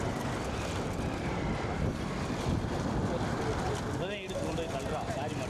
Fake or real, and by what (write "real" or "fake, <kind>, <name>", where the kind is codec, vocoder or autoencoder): real